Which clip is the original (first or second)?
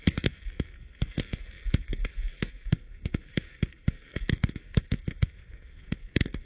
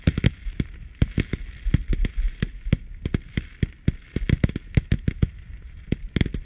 second